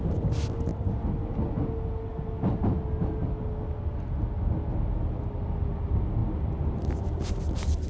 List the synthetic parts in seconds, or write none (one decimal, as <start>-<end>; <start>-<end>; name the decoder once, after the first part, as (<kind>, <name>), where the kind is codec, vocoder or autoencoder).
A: none